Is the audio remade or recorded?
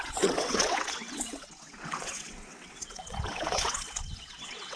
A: remade